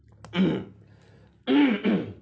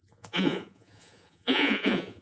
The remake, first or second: second